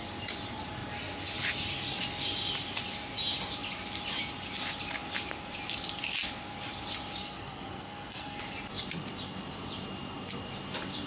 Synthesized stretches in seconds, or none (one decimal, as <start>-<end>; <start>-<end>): 7.2-8.4